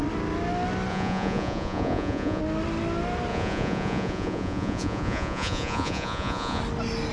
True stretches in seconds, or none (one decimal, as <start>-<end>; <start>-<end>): 0.0-0.9; 2.4-3.3; 6.6-7.1